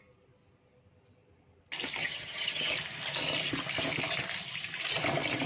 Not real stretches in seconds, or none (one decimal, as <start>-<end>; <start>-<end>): 2.0-2.7